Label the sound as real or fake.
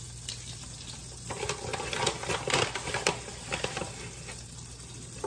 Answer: real